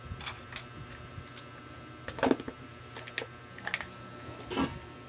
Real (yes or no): yes